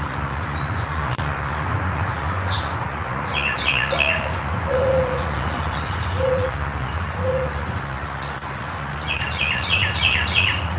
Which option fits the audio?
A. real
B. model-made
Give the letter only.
B